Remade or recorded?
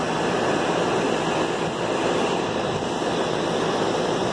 recorded